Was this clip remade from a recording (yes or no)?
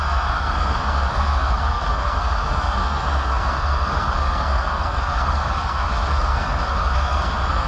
yes